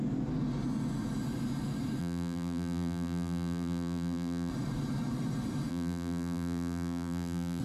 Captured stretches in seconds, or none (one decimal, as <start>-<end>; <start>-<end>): 0.0-2.0; 4.5-5.7